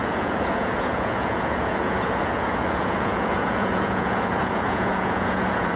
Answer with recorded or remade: remade